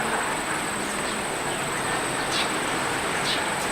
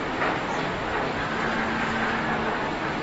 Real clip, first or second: second